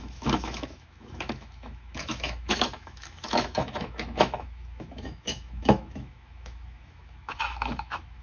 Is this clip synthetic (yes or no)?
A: yes